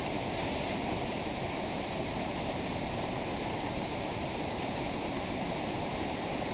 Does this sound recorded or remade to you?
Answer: remade